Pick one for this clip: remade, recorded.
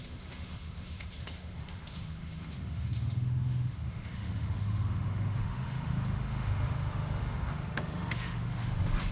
remade